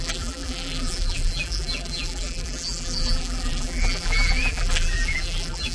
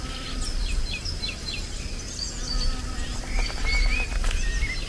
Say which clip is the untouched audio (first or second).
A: second